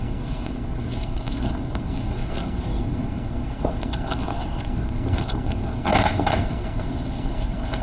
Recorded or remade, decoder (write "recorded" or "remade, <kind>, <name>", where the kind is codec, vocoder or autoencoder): remade, codec, SNAC